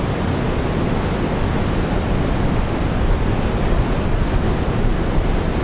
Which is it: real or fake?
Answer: real